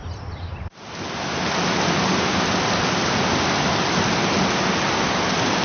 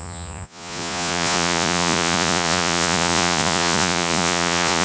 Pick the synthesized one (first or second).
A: second